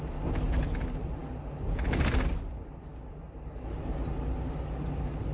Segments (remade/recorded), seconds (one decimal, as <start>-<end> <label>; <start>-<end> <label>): 0.0-5.3 recorded